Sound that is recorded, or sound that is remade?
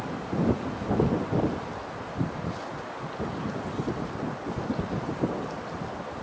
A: recorded